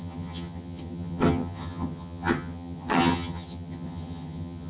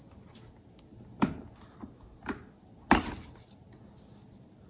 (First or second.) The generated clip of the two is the first